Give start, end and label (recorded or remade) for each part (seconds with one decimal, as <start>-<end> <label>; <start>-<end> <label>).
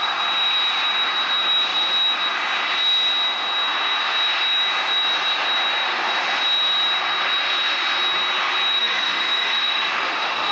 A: 0.0-8.8 recorded; 8.8-10.5 remade